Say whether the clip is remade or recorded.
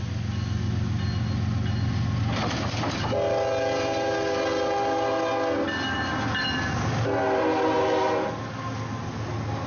recorded